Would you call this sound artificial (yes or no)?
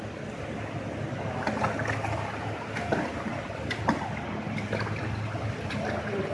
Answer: no